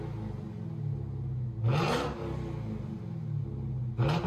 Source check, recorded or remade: recorded